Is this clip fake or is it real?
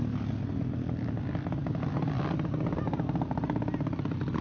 real